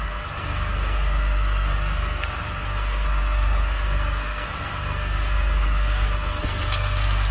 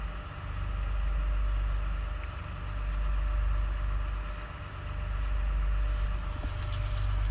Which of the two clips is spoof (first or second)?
first